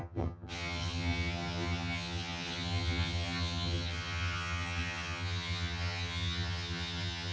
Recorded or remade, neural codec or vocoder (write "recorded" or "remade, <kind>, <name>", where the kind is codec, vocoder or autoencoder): remade, vocoder, HiFi-GAN